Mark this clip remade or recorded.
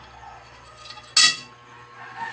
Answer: recorded